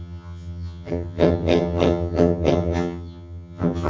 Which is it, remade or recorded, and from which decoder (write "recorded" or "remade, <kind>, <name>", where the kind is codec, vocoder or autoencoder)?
remade, vocoder, HiFi-GAN